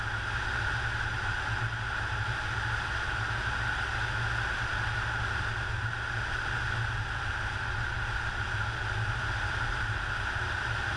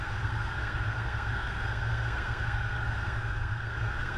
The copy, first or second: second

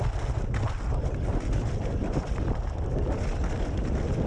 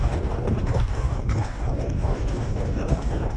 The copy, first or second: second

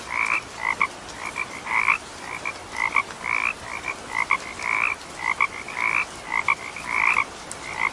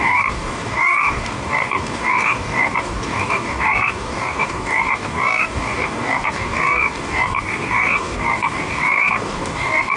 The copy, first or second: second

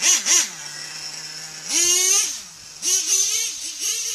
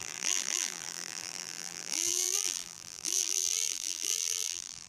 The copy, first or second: second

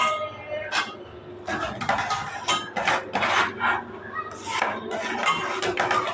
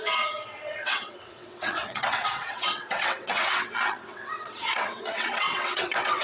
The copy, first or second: second